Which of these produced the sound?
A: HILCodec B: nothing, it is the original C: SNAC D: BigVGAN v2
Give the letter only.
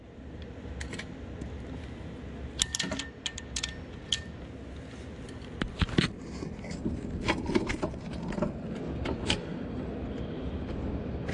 B